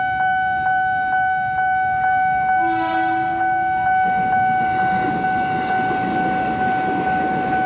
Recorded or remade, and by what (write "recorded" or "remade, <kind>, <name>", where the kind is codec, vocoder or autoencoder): recorded